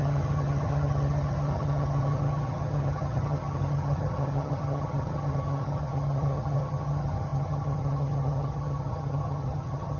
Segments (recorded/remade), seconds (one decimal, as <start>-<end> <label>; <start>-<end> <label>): 0.0-10.0 remade